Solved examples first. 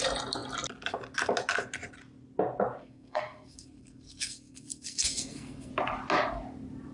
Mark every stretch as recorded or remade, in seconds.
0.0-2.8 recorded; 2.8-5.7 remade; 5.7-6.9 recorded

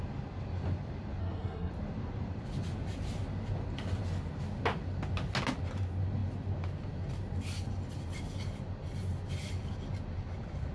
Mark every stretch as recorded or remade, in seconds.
0.0-1.2 recorded; 1.2-1.7 remade; 1.7-10.7 recorded

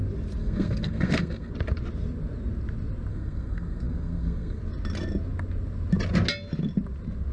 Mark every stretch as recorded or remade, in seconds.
0.0-0.4 recorded; 0.4-1.5 remade; 1.5-3.1 recorded; 3.1-4.6 remade; 4.6-7.3 recorded